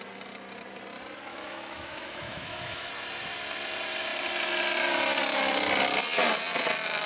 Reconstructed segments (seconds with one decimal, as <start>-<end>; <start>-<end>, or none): 1.3-2.9